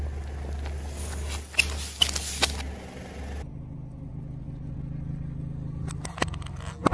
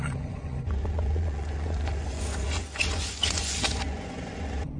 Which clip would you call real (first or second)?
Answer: first